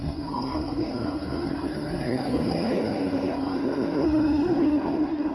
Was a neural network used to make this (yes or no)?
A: yes